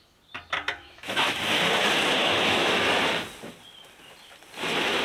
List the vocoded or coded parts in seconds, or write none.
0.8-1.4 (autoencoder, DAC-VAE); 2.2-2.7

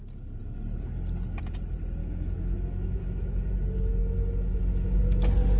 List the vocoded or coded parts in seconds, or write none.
2.0-3.5 (autoencoder, DAC-VAE); 4.0-5.0